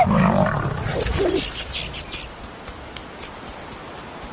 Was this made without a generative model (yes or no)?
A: yes